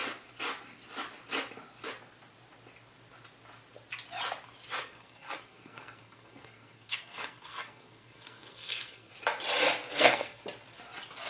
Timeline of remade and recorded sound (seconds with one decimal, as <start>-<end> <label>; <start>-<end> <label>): 0.0-4.8 recorded; 4.8-9.1 remade; 9.1-9.9 recorded; 9.9-10.4 remade; 10.4-11.3 recorded